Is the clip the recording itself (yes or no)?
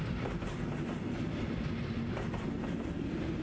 yes